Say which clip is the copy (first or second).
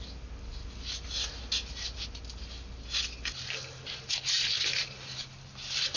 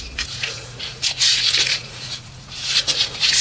second